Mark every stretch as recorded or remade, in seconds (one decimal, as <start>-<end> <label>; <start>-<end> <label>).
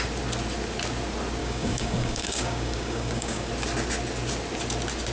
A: 0.0-1.4 recorded; 1.4-3.5 remade; 3.5-5.1 recorded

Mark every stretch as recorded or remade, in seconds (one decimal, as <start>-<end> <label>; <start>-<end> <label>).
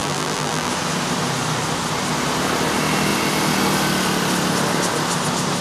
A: 0.0-0.7 remade; 0.7-5.6 recorded